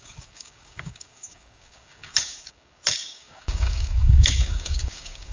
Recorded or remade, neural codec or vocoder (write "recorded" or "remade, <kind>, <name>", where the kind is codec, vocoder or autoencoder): remade, codec, DAC